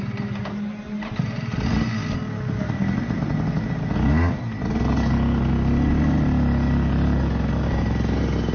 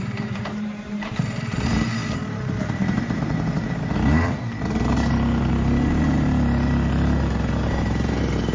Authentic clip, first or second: first